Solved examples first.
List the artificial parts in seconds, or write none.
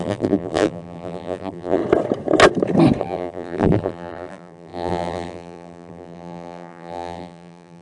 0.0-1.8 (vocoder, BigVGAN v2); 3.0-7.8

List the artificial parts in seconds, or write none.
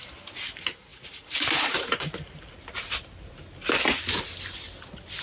0.9-2.1 (vocoder, BigVGAN v2)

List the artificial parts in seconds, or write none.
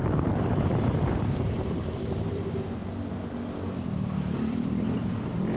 0.0-2.8 (vocoder, BigVGAN v2); 3.9-5.6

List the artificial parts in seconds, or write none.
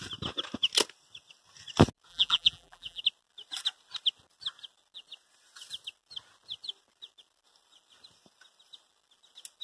2.1-3.0 (vocoder, BigVGAN v2)